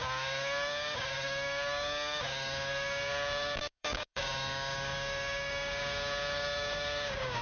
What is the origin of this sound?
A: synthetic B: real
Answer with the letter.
A